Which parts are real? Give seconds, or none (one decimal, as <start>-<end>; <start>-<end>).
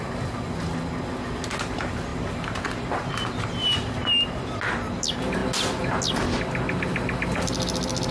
0.0-8.1